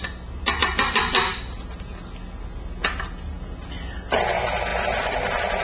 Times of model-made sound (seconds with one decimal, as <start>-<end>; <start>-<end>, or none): none